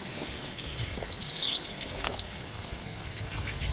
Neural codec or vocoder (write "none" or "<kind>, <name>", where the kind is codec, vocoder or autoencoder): codec, SNAC